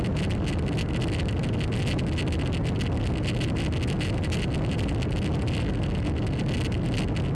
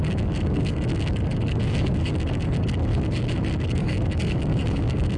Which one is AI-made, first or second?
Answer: second